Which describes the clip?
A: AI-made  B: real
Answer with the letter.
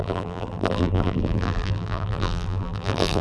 A